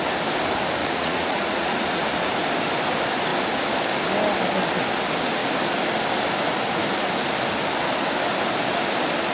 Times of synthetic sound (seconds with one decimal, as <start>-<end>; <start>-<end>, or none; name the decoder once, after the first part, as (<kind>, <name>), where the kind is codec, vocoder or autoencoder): 0.8-2.0 (vocoder, Vocos)